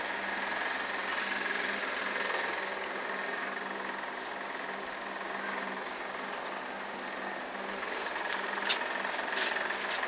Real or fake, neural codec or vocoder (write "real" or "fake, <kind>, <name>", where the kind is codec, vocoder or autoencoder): real